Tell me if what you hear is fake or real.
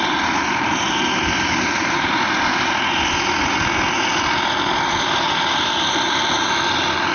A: real